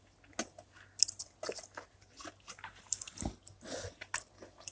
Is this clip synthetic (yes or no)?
no